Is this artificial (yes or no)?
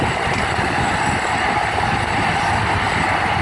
no